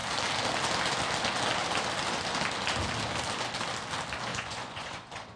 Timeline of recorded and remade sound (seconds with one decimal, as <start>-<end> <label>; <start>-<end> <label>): 0.0-4.3 recorded; 4.3-5.4 remade